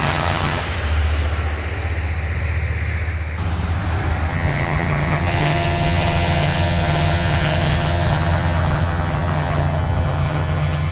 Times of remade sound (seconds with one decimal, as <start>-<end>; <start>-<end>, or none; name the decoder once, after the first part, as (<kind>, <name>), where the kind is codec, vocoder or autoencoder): 0.0-0.6 (vocoder, HiFi-GAN); 4.3-10.9